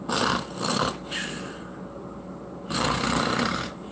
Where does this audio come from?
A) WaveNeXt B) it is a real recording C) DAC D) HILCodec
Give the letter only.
B